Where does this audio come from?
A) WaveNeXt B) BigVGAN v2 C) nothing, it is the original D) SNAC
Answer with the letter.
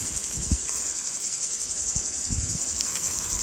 D